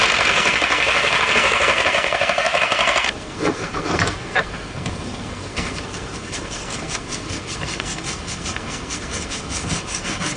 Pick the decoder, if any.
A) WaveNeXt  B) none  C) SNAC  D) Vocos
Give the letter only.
C